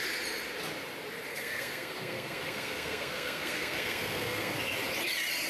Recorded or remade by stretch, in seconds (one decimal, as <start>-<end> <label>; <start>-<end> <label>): 0.0-1.3 recorded; 1.3-4.6 remade; 4.6-5.5 recorded